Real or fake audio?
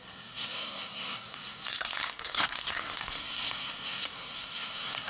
fake